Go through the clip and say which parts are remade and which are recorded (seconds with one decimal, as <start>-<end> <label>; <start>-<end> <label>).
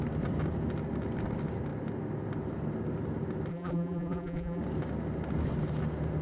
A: 0.0-3.5 recorded; 3.5-4.6 remade; 4.6-6.2 recorded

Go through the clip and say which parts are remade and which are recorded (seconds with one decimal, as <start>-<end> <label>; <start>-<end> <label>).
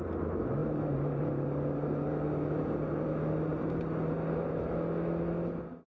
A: 0.0-0.6 recorded; 0.6-3.1 remade; 3.1-3.5 recorded; 3.5-4.5 remade; 4.5-5.9 recorded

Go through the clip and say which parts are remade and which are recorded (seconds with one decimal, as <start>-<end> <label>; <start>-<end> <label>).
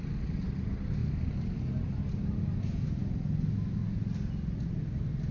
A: 0.0-3.8 recorded; 3.8-4.7 remade; 4.7-5.3 recorded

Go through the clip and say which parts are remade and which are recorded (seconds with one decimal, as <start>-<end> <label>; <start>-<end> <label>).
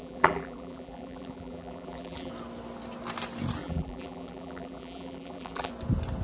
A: 0.0-2.3 remade; 2.3-3.6 recorded; 3.6-5.7 remade; 5.7-6.2 recorded